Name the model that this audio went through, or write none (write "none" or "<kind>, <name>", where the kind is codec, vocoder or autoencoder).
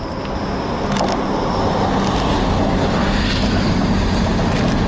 none